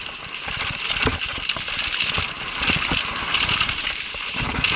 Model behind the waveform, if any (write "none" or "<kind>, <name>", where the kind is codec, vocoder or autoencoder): none